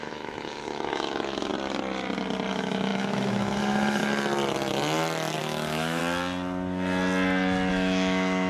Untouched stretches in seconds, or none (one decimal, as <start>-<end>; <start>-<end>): 1.5-2.5; 4.0-5.4; 6.0-7.7